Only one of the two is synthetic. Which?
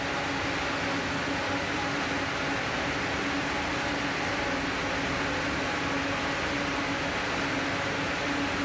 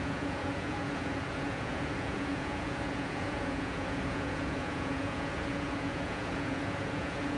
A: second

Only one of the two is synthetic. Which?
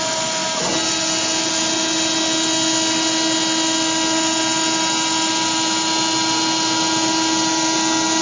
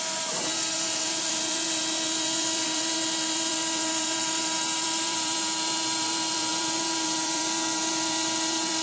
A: second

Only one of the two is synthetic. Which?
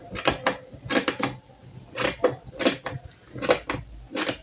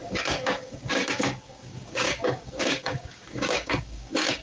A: second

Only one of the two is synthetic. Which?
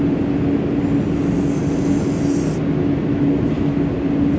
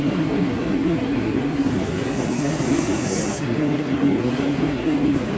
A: second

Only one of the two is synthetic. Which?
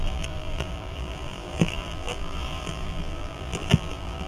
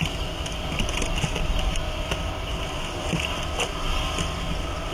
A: first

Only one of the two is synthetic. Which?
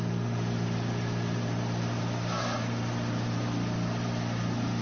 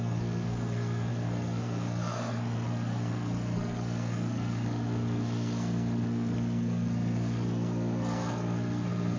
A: second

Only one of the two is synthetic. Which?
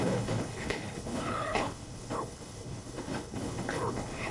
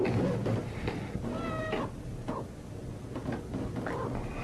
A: first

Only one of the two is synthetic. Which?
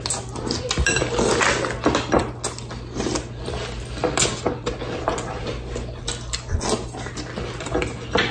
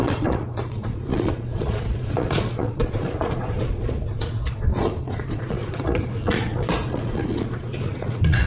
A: second